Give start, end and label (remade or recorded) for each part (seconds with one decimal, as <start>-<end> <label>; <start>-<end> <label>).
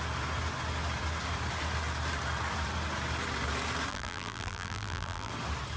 0.0-3.9 recorded; 3.9-5.3 remade; 5.3-5.8 recorded